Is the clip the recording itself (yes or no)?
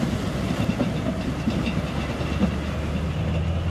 yes